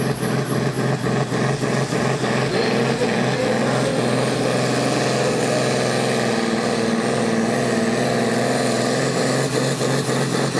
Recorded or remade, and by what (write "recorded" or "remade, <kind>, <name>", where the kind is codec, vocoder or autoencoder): recorded